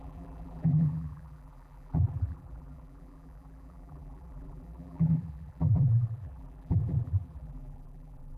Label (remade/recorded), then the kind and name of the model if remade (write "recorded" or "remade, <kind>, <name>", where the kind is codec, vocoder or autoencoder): remade, vocoder, BigVGAN v2